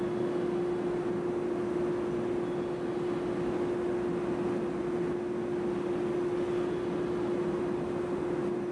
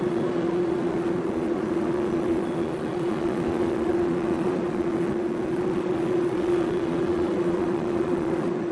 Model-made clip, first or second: second